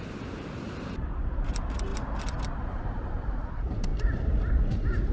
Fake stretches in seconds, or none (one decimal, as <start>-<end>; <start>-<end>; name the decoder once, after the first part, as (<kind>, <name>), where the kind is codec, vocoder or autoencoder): 0.0-1.9 (vocoder, BigVGAN v2); 2.5-5.1